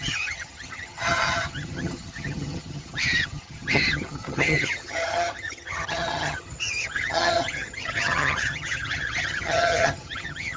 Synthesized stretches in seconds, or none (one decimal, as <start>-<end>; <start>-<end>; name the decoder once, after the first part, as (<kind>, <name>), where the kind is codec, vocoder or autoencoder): 0.0-10.6 (vocoder, HiFi-GAN)